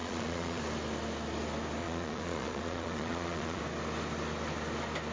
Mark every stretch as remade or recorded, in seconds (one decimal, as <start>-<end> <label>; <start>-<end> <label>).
0.0-0.6 remade; 0.6-1.8 recorded; 1.8-3.6 remade; 3.6-5.1 recorded